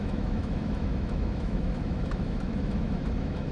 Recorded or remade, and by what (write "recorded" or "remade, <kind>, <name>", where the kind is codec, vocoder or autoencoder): remade, autoencoder, DAC-VAE